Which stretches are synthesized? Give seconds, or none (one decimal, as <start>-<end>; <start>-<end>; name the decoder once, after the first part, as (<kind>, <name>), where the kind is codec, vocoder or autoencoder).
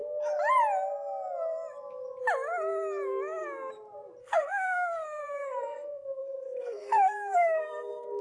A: 4.2-8.2 (codec, SNAC)